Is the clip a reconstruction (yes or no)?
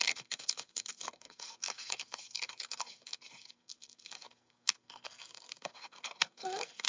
yes